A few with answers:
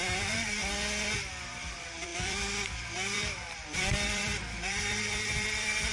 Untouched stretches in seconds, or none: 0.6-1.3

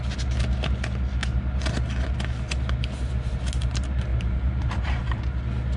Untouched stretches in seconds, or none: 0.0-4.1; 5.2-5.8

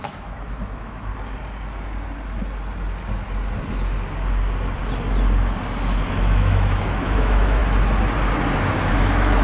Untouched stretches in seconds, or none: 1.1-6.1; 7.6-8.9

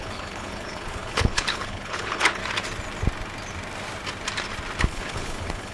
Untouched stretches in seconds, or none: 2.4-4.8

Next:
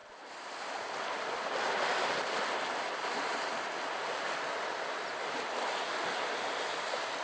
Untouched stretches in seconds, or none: 0.0-7.2

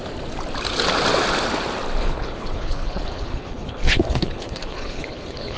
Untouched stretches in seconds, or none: 0.0-2.0